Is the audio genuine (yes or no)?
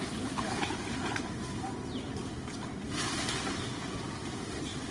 yes